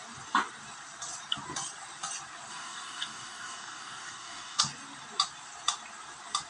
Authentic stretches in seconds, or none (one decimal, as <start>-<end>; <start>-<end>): 0.0-2.5; 4.6-6.5